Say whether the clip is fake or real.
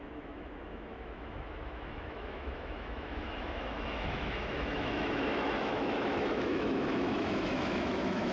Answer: fake